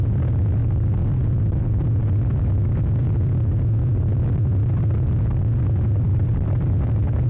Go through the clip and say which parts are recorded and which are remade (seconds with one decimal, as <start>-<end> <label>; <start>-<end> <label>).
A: 0.0-6.1 recorded; 6.1-7.3 remade